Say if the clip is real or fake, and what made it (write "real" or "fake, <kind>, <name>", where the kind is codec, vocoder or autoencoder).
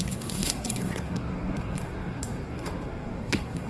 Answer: fake, codec, SNAC